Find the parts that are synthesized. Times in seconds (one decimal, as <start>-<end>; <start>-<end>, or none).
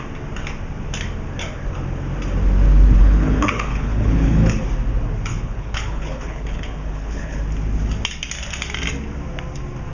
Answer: 3.0-4.6; 5.3-7.4